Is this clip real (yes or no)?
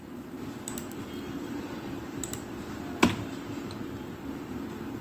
yes